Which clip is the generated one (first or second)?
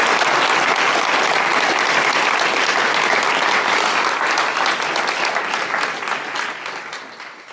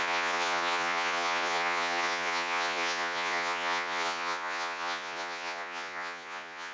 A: second